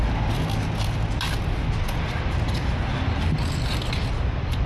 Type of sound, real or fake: real